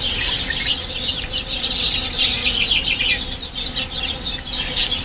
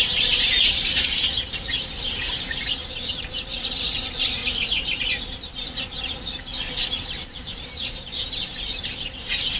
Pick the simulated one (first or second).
second